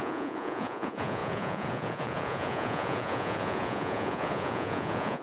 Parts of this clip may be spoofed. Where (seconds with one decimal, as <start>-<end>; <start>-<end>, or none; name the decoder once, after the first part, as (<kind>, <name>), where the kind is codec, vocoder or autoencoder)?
0.0-5.2 (vocoder, Vocos)